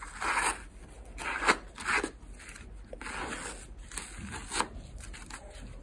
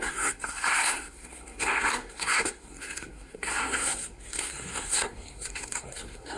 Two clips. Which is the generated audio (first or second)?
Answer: second